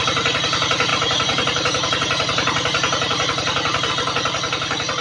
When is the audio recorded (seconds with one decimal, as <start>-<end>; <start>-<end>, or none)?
0.0-0.9; 3.9-5.0